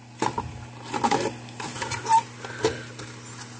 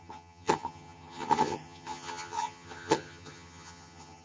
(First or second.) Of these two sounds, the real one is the first